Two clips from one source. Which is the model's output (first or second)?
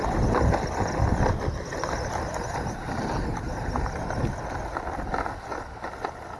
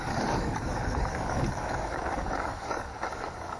second